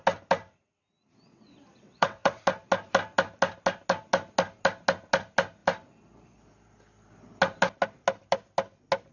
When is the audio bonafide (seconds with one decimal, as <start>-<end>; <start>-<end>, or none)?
0.0-1.3; 2.4-9.1